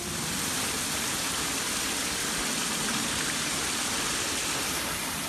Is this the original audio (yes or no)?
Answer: yes